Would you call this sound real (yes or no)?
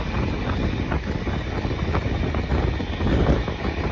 yes